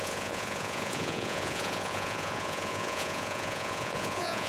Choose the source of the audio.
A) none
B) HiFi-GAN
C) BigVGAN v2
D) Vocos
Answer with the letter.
D